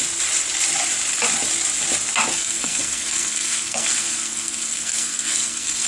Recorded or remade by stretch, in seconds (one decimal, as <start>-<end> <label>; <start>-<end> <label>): 0.0-2.3 recorded; 2.3-5.9 remade